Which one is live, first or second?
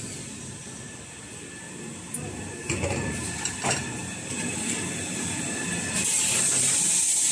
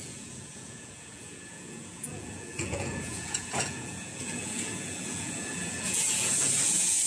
first